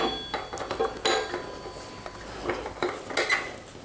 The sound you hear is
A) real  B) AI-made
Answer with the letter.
A